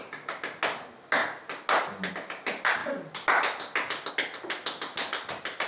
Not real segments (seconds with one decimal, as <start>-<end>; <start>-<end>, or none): none